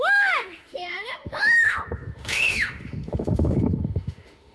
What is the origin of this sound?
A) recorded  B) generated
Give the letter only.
B